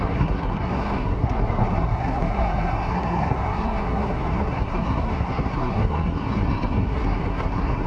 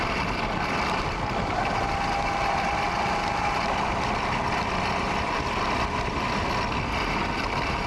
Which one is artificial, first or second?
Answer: first